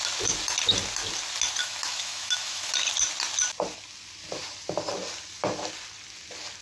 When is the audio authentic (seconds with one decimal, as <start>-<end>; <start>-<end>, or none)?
0.0-1.6; 2.7-6.6